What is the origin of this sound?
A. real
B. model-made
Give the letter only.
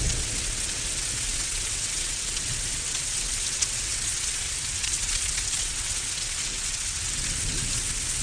B